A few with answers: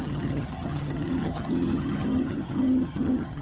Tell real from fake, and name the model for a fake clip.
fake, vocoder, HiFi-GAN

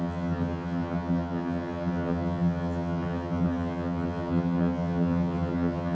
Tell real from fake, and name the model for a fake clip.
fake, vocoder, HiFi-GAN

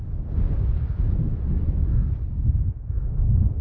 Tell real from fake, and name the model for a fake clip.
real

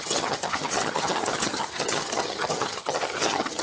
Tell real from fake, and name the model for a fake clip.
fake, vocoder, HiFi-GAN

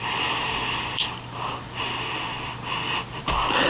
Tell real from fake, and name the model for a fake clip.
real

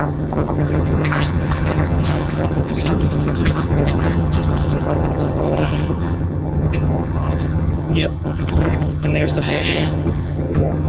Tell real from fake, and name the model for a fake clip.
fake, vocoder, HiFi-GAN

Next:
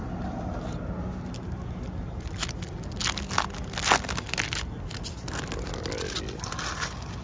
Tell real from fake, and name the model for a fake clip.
real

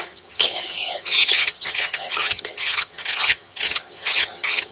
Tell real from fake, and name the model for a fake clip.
fake, vocoder, HiFi-GAN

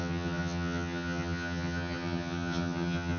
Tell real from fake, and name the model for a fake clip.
fake, vocoder, HiFi-GAN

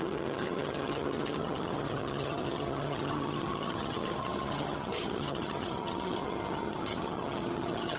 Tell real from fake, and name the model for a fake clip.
fake, vocoder, HiFi-GAN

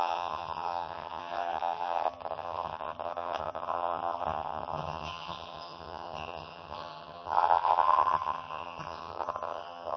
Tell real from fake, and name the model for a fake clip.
fake, vocoder, HiFi-GAN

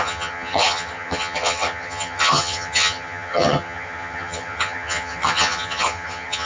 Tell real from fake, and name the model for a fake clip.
fake, vocoder, HiFi-GAN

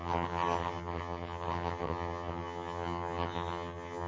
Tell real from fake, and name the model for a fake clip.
fake, vocoder, HiFi-GAN